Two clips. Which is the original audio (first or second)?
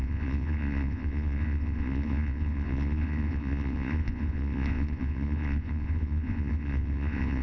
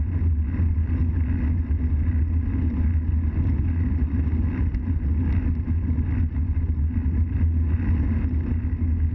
second